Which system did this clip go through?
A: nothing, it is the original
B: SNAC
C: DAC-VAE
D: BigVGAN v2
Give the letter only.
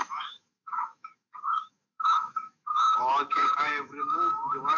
C